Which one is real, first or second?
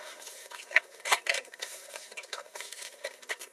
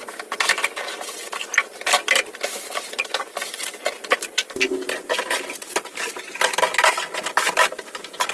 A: second